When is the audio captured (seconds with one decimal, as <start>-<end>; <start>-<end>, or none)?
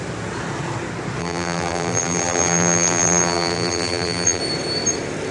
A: 0.0-1.2; 4.4-5.3